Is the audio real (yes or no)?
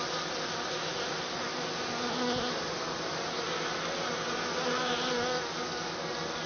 yes